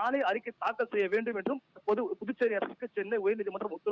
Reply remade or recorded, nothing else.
remade